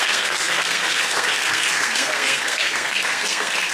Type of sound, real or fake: fake